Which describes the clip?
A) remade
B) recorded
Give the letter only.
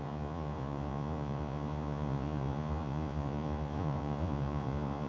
A